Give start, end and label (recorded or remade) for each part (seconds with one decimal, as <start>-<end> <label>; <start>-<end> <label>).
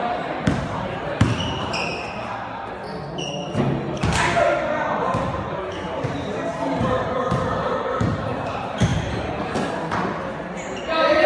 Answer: 0.0-1.9 remade; 1.9-5.0 recorded; 5.0-8.9 remade; 8.9-11.3 recorded